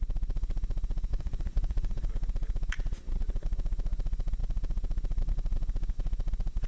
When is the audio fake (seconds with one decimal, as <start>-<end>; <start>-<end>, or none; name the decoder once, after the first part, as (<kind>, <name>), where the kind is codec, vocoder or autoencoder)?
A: 1.1-2.1 (vocoder, Vocos)